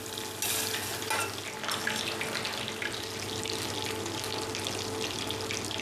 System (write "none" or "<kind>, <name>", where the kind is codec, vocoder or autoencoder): none